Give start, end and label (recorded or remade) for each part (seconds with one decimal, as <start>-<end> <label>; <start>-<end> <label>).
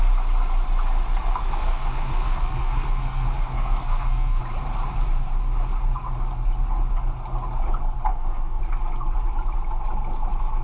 0.0-1.4 recorded; 1.4-4.4 remade; 4.4-8.1 recorded; 8.1-8.6 remade; 8.6-10.6 recorded